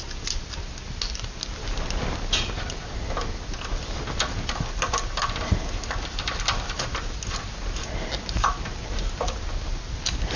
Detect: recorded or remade recorded